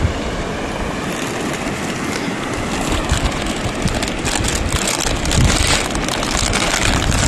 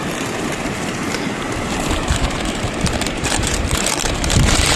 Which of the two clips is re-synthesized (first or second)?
second